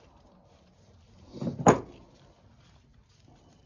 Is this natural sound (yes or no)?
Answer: yes